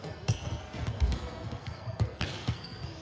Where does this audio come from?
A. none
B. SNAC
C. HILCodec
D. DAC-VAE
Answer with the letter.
B